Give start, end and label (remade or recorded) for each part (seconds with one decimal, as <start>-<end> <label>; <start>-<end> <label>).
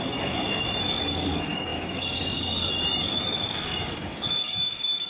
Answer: 0.0-5.1 remade